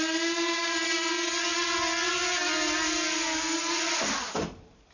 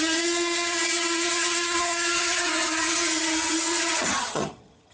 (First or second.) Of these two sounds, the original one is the first